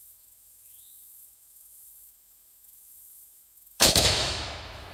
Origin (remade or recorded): remade